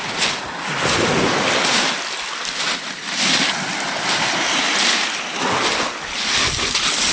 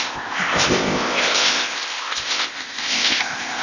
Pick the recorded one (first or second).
first